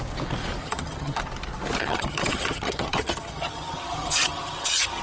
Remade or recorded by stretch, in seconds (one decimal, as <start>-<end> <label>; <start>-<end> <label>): 0.0-0.6 recorded; 0.6-1.2 remade; 1.2-1.8 recorded; 1.8-5.0 remade